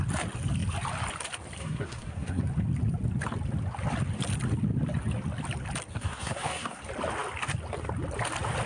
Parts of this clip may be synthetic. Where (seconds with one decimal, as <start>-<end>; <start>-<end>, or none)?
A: 1.6-2.4; 5.9-6.8